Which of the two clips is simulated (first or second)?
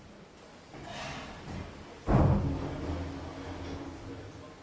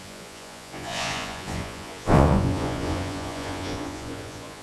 second